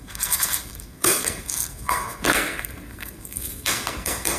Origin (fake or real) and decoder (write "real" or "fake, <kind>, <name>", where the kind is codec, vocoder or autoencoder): fake, codec, SNAC